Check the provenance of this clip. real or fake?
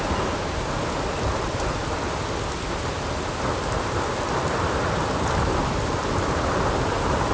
real